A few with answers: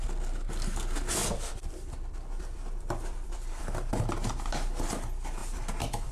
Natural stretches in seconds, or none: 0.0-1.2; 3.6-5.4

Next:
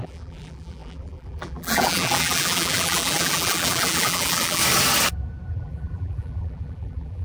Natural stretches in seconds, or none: 4.6-5.5

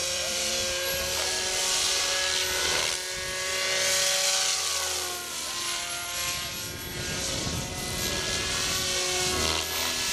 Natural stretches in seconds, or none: 0.5-10.1

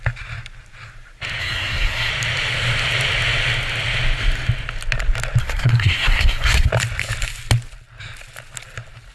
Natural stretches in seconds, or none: 0.0-1.4; 2.1-5.4; 6.7-9.1